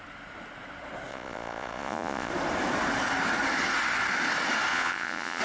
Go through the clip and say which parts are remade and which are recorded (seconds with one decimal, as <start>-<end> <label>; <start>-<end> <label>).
0.0-1.1 recorded; 1.1-2.3 remade; 2.3-4.7 recorded; 4.7-5.4 remade